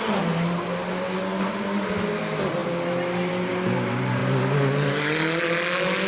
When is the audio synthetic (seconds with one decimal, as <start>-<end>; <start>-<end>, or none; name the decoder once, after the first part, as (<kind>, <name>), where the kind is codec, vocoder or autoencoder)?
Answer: none

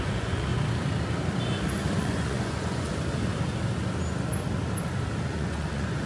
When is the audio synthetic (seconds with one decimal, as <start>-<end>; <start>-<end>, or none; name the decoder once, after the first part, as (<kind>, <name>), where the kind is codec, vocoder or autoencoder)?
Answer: 0.0-0.5 (vocoder, Vocos); 2.0-2.9; 5.2-6.1

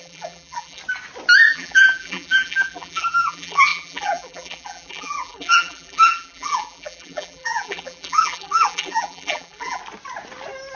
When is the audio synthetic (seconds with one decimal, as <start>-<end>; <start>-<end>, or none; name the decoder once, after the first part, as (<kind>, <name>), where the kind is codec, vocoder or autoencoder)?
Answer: 0.0-0.8 (vocoder, BigVGAN v2); 1.5-9.8

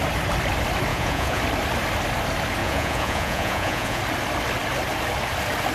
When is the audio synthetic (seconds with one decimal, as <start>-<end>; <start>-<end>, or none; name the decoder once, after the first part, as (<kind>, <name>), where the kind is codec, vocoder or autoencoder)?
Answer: 0.9-1.4 (vocoder, Vocos); 2.6-4.0